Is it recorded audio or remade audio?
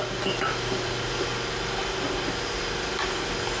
recorded